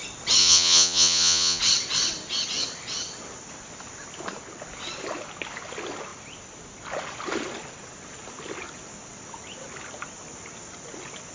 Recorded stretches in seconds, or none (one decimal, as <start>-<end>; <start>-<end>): 0.0-0.4; 1.6-11.3